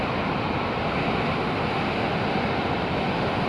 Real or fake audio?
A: real